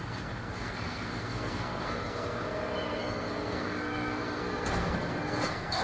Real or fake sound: fake